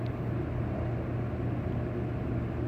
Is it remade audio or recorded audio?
remade